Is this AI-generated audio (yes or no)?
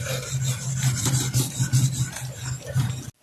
no